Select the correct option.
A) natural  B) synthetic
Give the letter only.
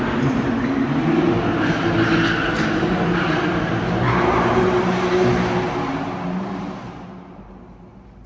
A